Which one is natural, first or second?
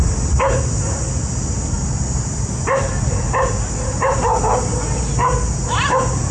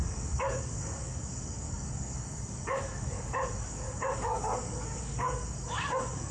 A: first